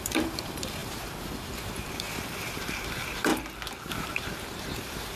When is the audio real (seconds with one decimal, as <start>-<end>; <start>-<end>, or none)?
3.3-3.9